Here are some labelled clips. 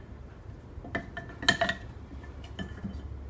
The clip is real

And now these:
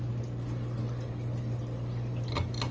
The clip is real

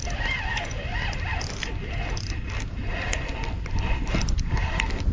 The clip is real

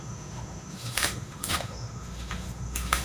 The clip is fake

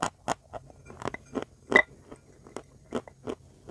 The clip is real